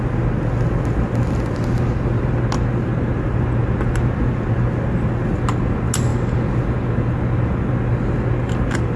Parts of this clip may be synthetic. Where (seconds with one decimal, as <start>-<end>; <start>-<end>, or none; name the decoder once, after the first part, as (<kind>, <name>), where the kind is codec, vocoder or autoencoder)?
none